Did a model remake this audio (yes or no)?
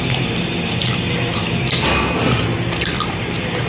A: no